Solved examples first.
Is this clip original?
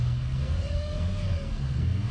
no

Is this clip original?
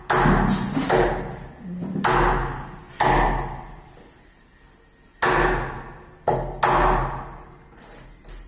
yes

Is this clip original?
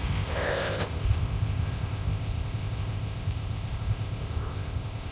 no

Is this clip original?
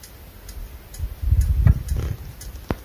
yes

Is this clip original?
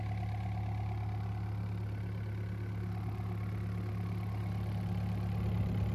yes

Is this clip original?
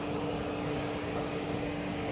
no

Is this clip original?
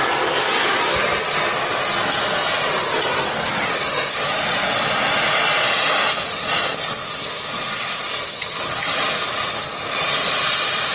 yes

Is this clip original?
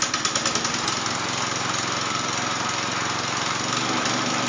yes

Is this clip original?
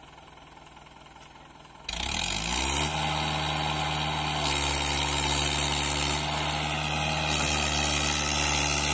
yes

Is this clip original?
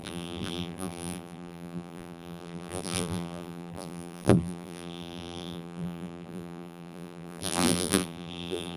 no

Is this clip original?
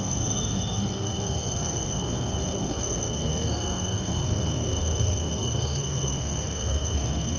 no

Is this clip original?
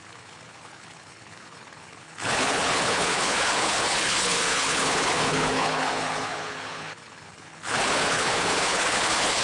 no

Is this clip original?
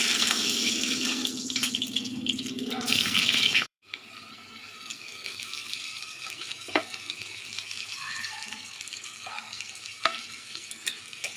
no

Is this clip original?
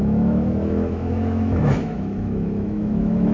no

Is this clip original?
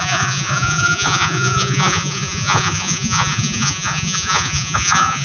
no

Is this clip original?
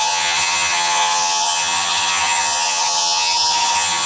no